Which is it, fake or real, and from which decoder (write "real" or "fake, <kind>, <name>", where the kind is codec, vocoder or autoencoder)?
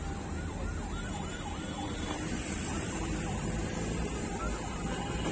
fake, vocoder, BigVGAN v2